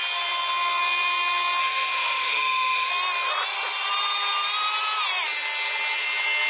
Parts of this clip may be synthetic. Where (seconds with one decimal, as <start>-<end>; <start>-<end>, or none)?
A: 1.6-2.9